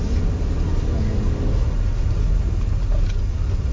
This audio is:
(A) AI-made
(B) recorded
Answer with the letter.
B